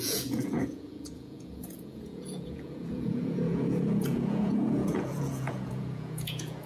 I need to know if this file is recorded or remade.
remade